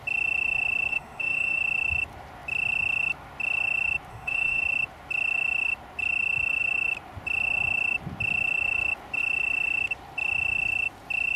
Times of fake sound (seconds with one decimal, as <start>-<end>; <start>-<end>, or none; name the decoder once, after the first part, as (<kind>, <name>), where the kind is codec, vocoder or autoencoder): 0.9-1.6 (autoencoder, DAC-VAE); 4.1-4.6